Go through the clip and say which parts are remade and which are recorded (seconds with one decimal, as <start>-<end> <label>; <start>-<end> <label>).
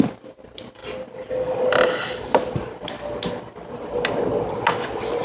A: 0.0-5.2 recorded